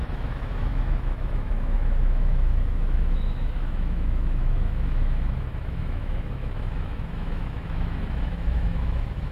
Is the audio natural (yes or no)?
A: no